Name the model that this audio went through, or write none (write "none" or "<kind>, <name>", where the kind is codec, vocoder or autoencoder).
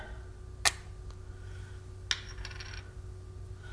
none